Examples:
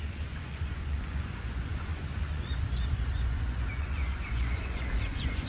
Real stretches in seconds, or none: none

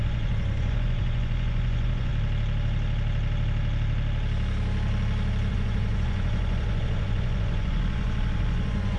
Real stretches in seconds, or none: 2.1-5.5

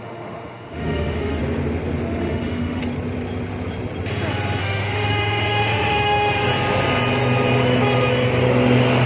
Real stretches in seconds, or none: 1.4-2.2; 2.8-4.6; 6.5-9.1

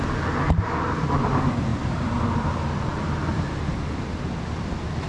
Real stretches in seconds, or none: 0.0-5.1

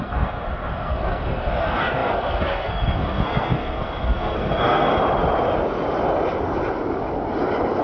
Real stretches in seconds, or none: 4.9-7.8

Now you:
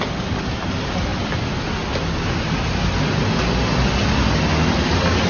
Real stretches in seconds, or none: 0.0-5.3